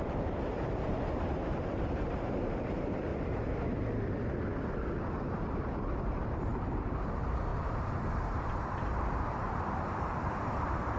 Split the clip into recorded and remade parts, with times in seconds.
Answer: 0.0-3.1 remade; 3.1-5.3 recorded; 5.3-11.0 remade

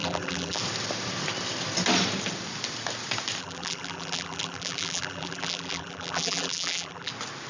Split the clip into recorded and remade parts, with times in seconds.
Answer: 0.0-0.6 remade; 0.6-3.4 recorded; 3.4-7.1 remade; 7.1-7.5 recorded

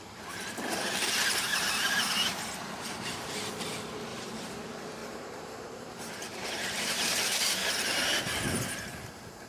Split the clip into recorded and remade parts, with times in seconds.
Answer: 0.0-1.5 recorded; 1.5-3.5 remade; 3.5-4.1 recorded; 4.1-4.6 remade; 4.6-5.0 recorded; 5.0-8.2 remade; 8.2-9.5 recorded

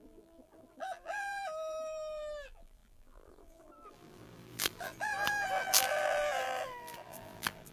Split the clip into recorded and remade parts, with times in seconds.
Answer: 0.0-7.7 remade